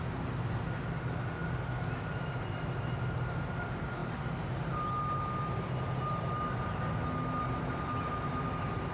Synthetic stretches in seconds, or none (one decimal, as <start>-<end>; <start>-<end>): none

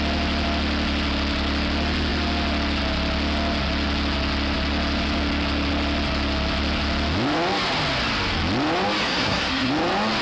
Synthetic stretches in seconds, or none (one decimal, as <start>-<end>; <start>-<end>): 9.0-9.7

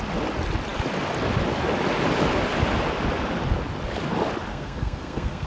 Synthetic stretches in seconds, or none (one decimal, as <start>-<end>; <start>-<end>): 4.5-5.5

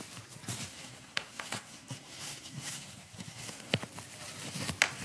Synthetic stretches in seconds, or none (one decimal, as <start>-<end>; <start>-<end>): 0.7-3.7